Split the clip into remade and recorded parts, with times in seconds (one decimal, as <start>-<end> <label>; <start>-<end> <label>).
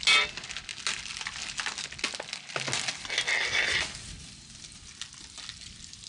0.0-6.1 recorded